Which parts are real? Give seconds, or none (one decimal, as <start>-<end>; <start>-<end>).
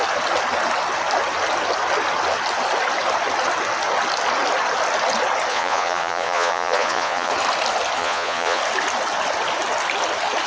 0.0-5.5; 7.3-8.0; 8.6-10.5